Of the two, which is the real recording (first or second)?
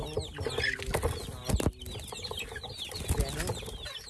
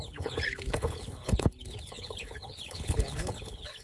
first